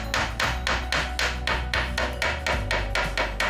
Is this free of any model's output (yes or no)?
yes